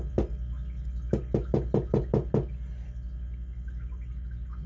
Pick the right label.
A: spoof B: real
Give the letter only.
B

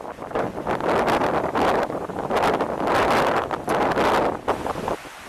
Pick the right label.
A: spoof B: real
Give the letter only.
B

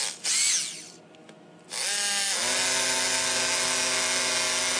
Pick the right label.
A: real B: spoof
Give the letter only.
A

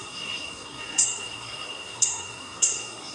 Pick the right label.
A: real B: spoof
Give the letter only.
B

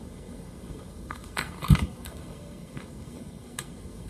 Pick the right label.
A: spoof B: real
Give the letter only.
A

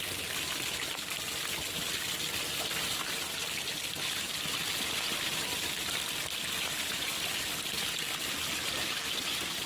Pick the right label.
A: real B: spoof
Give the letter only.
A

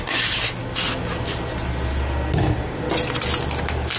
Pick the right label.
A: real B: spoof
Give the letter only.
A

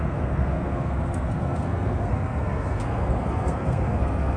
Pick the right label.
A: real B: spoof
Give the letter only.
B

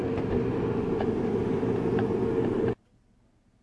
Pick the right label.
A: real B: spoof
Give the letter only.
A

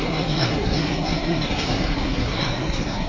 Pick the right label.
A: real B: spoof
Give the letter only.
B